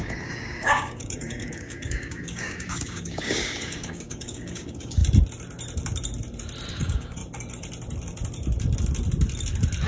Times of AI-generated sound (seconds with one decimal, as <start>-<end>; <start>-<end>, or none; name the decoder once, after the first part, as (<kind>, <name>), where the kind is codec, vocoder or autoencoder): 0.0-5.0 (codec, DAC); 6.7-7.2